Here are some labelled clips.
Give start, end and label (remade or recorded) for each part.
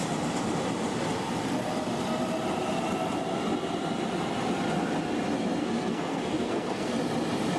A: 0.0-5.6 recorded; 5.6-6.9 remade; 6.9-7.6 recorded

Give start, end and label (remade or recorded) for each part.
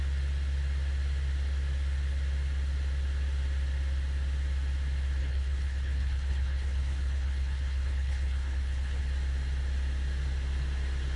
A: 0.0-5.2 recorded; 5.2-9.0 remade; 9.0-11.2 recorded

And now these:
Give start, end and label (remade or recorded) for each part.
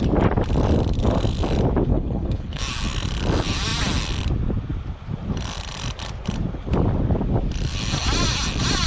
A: 0.0-1.9 recorded; 1.9-2.6 remade; 2.6-8.9 recorded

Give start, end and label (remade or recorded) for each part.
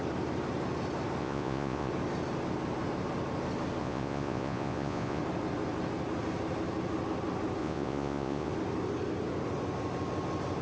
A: 0.0-1.2 recorded; 1.2-1.9 remade; 1.9-3.8 recorded; 3.8-5.2 remade; 5.2-7.6 recorded; 7.6-8.5 remade; 8.5-10.6 recorded